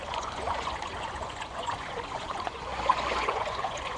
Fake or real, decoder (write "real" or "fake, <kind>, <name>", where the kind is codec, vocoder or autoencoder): fake, vocoder, Vocos